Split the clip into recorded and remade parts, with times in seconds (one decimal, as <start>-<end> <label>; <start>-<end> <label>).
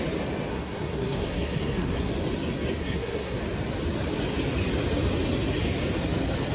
0.0-0.5 recorded; 0.5-2.1 remade; 2.1-2.8 recorded; 2.8-3.4 remade; 3.4-6.5 recorded